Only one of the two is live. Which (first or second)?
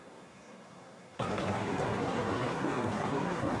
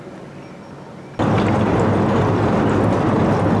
second